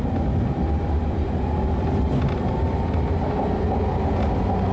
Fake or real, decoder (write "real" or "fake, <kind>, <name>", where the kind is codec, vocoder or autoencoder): real